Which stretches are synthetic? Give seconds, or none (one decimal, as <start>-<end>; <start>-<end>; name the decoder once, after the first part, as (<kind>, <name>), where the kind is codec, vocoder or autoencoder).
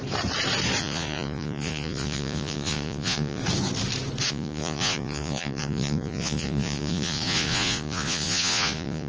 0.8-3.4 (vocoder, Vocos); 4.3-9.1